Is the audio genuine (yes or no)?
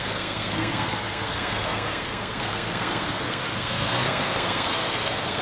no